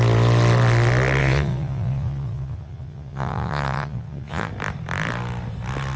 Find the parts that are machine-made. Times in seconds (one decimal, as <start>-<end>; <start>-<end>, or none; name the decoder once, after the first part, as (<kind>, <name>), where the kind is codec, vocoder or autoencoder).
1.2-4.5 (vocoder, Vocos)